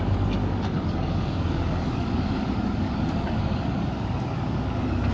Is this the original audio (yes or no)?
no